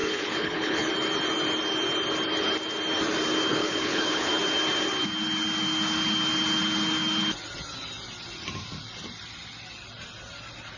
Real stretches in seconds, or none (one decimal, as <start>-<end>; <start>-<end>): 0.9-3.5; 4.3-10.8